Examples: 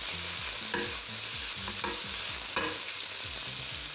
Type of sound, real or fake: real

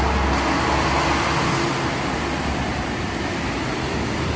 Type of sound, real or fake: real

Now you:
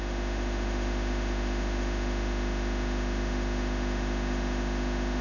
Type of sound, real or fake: fake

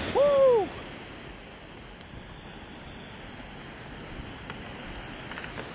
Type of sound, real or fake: real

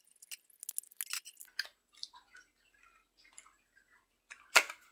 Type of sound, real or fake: real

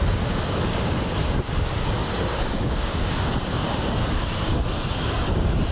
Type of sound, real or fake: fake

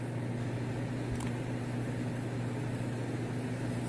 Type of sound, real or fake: real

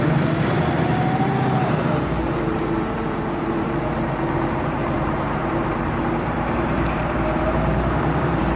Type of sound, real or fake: fake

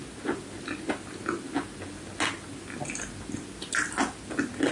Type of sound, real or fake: real